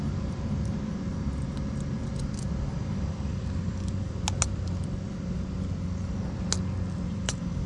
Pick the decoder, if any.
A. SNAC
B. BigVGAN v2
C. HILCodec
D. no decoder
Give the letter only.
D